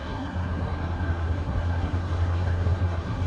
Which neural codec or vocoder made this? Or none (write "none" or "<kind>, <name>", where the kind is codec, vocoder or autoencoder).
codec, SNAC